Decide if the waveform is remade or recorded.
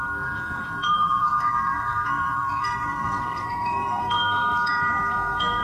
remade